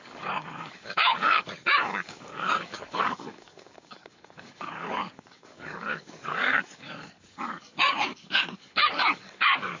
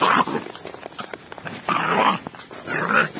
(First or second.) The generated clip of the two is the first